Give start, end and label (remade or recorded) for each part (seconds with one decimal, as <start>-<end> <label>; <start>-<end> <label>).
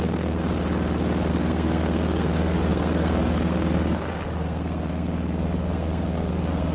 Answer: 0.0-0.5 remade; 0.5-1.3 recorded; 1.3-6.7 remade